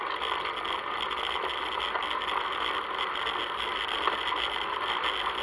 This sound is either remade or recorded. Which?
recorded